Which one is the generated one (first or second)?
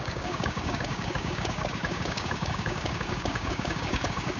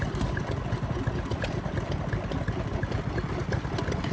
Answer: first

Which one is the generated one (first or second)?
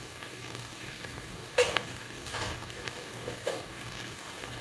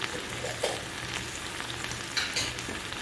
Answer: first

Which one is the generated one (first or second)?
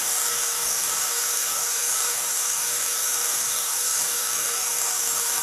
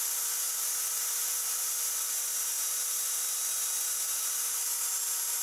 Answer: first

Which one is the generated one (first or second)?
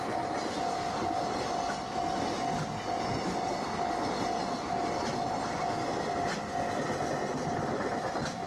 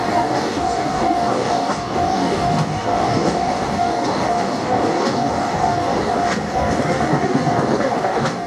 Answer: second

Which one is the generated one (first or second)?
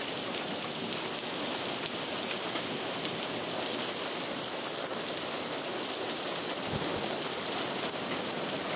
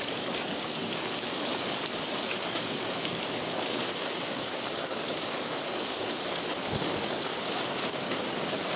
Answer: second